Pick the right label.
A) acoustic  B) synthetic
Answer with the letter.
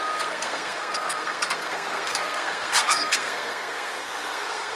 B